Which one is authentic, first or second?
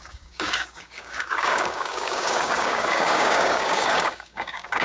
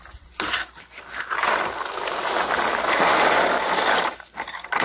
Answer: second